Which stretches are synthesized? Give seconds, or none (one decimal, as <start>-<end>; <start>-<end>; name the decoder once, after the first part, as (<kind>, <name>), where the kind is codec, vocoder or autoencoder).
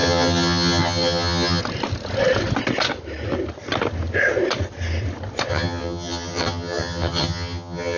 0.0-1.6 (vocoder, HiFi-GAN); 5.5-8.0